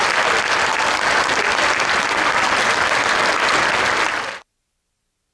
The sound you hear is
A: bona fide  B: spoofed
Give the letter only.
A